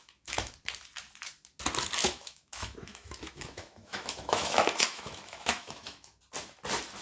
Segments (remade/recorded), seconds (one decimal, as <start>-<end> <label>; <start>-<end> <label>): 0.0-0.5 remade; 0.5-2.0 recorded; 2.0-6.2 remade; 6.2-7.0 recorded